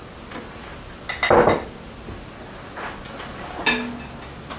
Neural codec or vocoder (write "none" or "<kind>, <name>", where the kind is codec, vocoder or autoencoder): none